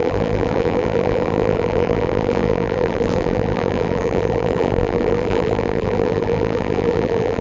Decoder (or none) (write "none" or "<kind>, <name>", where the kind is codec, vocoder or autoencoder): vocoder, BigVGAN v2